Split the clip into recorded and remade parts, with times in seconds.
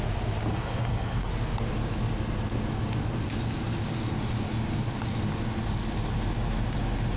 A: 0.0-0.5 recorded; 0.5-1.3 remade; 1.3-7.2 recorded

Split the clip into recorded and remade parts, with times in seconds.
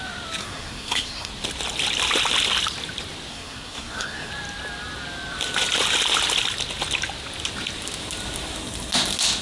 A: 0.0-0.4 recorded; 0.4-1.3 remade; 1.3-3.3 recorded; 3.3-4.3 remade; 4.3-9.4 recorded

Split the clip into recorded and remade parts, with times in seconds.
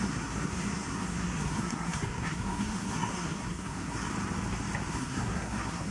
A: 0.0-4.1 remade; 4.1-4.9 recorded; 4.9-5.9 remade